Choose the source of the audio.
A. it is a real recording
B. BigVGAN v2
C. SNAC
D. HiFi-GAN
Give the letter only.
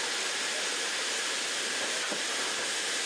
A